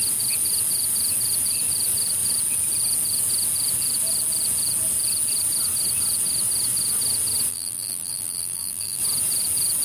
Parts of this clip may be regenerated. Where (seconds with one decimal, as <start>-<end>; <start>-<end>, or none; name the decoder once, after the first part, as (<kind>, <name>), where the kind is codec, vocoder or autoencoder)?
7.5-9.0 (vocoder, BigVGAN v2)